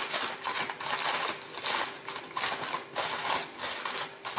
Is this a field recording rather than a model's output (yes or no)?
yes